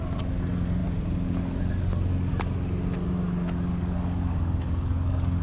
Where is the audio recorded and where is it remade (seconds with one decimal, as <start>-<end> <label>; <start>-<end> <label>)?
0.0-3.7 recorded; 3.7-5.4 remade